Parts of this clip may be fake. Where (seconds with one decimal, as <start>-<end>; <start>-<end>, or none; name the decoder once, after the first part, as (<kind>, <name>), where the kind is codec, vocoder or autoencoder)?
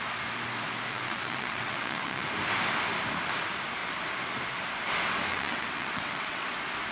0.9-2.3 (vocoder, WaveNeXt); 5.3-6.4